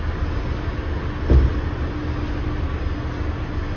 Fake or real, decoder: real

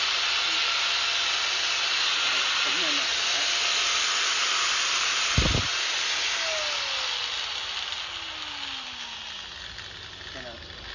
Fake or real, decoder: real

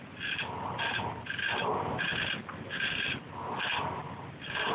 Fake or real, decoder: real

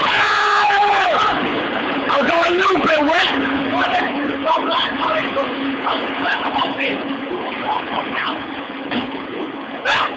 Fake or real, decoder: fake, codec, HILCodec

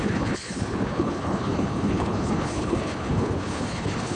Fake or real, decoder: fake, codec, HILCodec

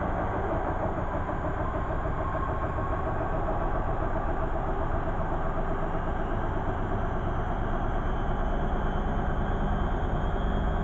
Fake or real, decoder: real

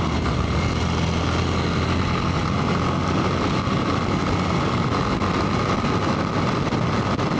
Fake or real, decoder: real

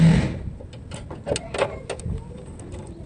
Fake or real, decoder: real